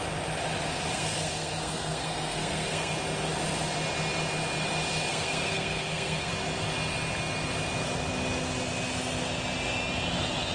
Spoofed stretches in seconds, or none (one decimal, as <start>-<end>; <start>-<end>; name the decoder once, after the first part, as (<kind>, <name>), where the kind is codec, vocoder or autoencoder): 0.9-2.9 (codec, SNAC); 5.1-6.3